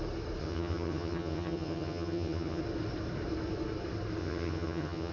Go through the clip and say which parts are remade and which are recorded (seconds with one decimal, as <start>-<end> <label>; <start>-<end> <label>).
0.0-0.4 recorded; 0.4-2.6 remade; 2.6-4.2 recorded; 4.2-5.1 remade